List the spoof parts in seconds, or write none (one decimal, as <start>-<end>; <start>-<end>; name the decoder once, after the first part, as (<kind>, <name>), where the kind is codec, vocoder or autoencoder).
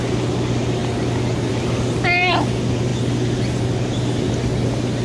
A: none